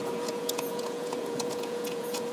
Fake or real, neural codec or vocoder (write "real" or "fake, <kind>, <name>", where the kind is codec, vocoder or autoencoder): fake, vocoder, Vocos